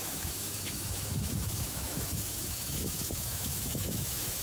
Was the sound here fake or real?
fake